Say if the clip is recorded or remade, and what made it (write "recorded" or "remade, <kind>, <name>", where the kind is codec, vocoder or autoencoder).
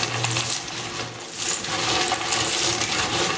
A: recorded